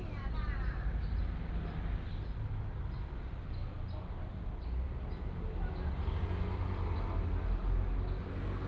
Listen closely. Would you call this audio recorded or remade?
recorded